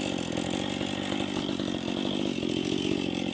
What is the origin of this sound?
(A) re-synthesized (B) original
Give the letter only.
B